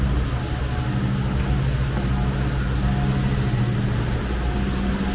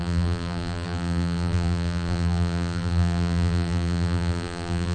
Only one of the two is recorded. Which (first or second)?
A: first